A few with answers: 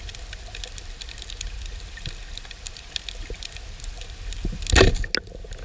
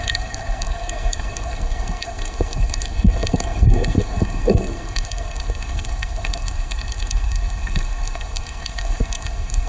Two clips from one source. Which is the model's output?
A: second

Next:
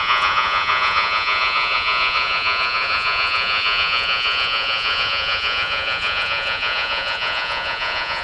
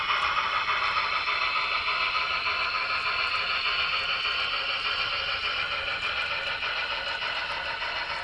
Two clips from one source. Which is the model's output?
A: first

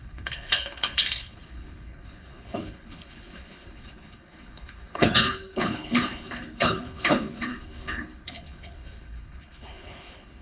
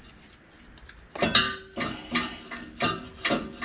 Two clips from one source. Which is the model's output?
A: first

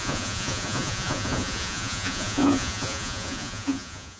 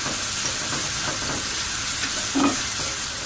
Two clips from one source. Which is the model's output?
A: first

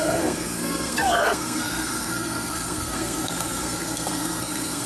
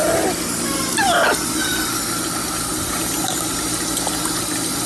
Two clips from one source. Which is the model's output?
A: first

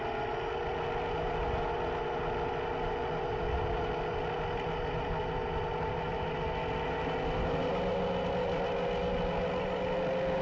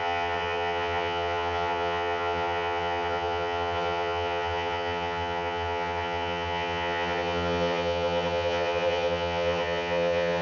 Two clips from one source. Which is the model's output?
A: second